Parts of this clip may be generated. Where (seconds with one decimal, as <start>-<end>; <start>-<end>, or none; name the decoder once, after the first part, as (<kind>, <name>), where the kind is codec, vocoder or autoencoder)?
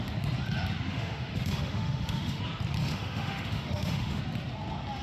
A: 0.9-2.4 (autoencoder, DAC-VAE); 2.8-4.2